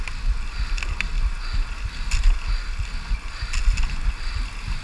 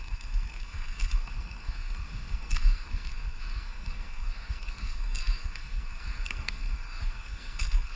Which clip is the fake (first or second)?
second